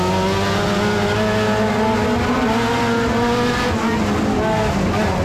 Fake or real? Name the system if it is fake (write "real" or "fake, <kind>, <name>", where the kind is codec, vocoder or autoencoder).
real